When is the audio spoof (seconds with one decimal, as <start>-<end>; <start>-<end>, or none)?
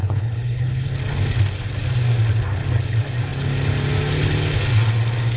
0.0-0.9